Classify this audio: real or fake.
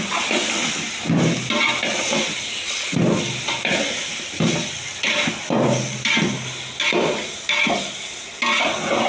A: real